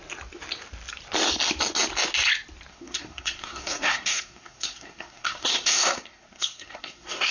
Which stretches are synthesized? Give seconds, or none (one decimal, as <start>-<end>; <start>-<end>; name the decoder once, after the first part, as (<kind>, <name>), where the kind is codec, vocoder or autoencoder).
2.7-7.3 (codec, SNAC)